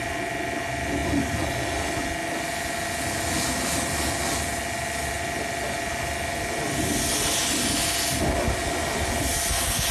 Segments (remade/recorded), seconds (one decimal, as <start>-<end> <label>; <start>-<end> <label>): 0.0-9.9 recorded